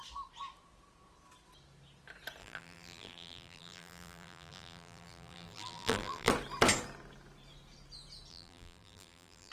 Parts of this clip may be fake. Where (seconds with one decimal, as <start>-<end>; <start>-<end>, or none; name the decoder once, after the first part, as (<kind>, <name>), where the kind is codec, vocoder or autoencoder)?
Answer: 2.4-6.3 (vocoder, BigVGAN v2); 8.3-9.5